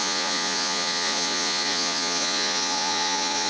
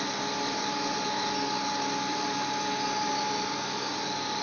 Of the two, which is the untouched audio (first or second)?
second